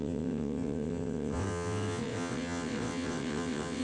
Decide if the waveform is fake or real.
fake